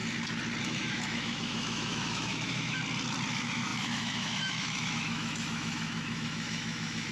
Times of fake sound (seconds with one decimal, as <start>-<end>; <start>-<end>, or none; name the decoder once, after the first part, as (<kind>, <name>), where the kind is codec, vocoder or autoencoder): 0.6-2.8 (autoencoder, DAC-VAE); 3.3-7.1